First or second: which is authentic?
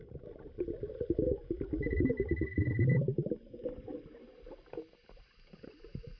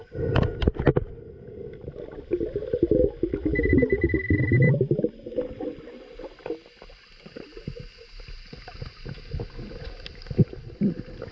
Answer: second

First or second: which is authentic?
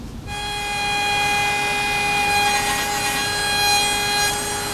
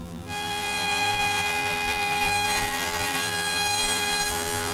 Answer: first